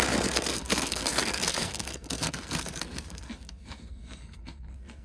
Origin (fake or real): fake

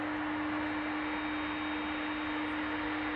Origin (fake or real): real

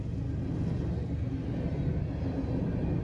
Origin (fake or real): real